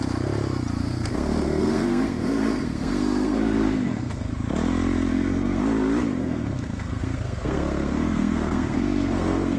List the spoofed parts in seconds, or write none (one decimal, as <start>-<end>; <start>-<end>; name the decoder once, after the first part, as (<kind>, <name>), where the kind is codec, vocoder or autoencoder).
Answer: 0.8-4.3 (codec, SNAC); 5.1-5.6; 6.2-9.6